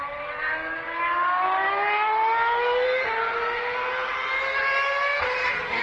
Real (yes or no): yes